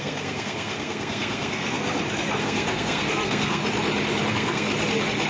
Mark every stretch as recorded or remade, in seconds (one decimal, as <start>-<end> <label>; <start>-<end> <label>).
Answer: 0.0-1.8 remade; 1.8-2.4 recorded; 2.4-3.6 remade; 3.6-4.3 recorded; 4.3-4.7 remade; 4.7-5.3 recorded

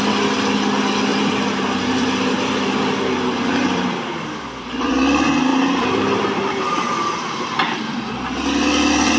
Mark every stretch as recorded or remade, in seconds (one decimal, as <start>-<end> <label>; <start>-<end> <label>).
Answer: 0.0-1.1 recorded; 1.1-4.9 remade; 4.9-5.5 recorded; 5.5-8.1 remade; 8.1-9.2 recorded

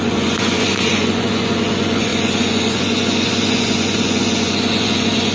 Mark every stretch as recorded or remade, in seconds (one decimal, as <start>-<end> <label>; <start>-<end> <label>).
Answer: 0.0-5.3 remade

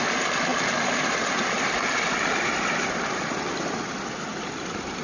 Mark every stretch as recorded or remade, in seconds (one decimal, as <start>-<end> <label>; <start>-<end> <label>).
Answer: 0.0-5.0 recorded